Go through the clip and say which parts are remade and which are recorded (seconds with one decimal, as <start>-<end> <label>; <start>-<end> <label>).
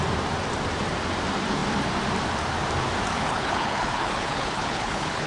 0.0-3.1 recorded; 3.1-5.3 remade